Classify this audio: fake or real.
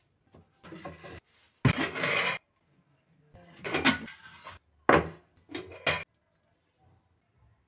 real